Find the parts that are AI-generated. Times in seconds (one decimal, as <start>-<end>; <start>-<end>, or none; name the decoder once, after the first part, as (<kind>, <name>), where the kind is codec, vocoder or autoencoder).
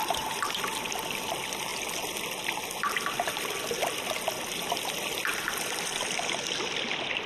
0.0-0.6 (vocoder, BigVGAN v2)